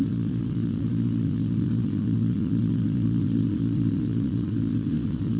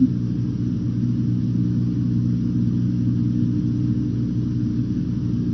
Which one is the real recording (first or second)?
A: second